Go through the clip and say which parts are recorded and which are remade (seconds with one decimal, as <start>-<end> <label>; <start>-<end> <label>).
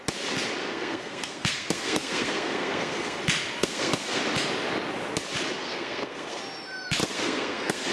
0.0-0.6 recorded; 0.6-3.2 remade; 3.2-3.6 recorded; 3.6-4.2 remade; 4.2-5.6 recorded; 5.6-6.4 remade; 6.4-7.0 recorded; 7.0-7.9 remade